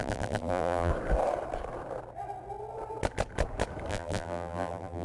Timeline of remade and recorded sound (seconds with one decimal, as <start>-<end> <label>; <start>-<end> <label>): 0.0-0.9 remade; 0.9-3.9 recorded; 3.9-5.0 remade